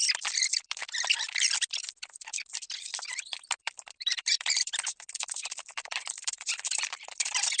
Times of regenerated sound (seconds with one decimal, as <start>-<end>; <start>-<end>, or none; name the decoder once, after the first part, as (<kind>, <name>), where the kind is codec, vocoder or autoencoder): 0.0-0.8 (vocoder, BigVGAN v2); 3.6-7.6